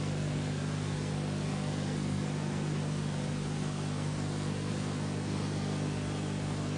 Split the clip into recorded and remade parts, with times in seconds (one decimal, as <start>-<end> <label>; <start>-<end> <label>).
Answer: 0.0-6.8 remade